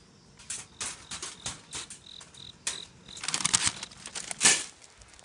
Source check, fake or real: real